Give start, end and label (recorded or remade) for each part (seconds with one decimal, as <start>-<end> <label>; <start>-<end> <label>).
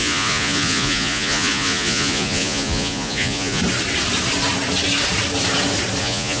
0.0-3.6 remade; 3.6-6.0 recorded; 6.0-6.4 remade